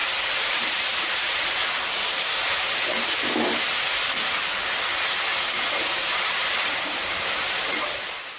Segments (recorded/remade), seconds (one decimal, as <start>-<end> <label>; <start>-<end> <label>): 0.0-0.5 recorded; 0.5-1.6 remade; 1.6-5.7 recorded; 5.7-8.4 remade